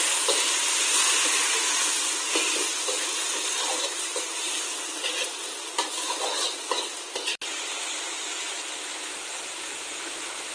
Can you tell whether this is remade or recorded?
recorded